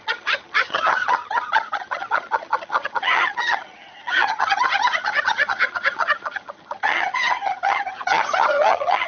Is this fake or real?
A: fake